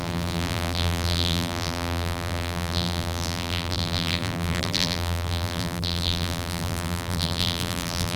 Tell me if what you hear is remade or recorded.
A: remade